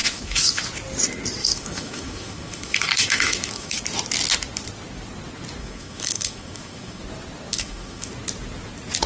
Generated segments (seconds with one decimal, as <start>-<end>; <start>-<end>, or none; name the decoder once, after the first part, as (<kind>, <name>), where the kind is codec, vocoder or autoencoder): 0.0-0.6 (autoencoder, DAC-VAE); 1.4-3.8; 5.6-7.0; 7.5-8.1